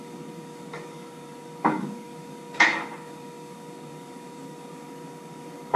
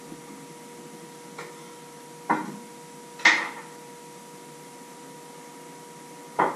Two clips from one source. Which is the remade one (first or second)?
first